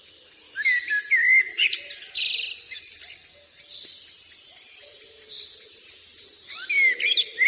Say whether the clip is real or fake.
real